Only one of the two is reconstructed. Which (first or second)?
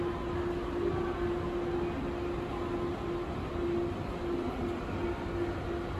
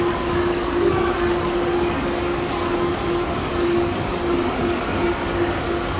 second